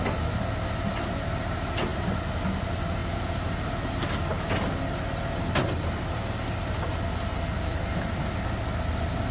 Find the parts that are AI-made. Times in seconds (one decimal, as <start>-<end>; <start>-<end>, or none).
none